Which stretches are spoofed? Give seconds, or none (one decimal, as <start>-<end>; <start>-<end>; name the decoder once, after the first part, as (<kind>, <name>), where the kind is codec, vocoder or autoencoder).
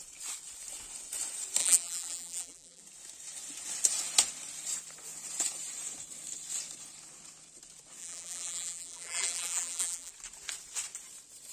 1.6-2.8 (vocoder, BigVGAN v2); 8.0-10.1